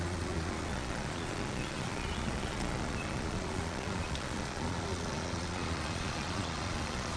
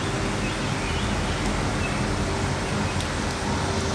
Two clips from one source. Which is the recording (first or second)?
second